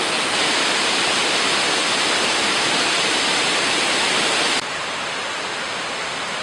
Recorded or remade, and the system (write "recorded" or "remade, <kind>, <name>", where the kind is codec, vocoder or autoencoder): recorded